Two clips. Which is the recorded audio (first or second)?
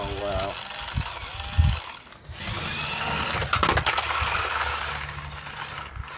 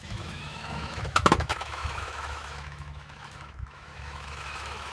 first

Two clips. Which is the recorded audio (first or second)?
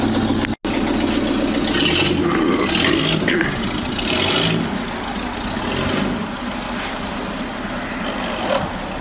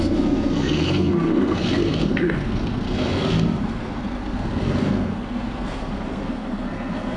first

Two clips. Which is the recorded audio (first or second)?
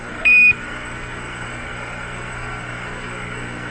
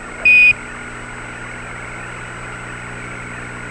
second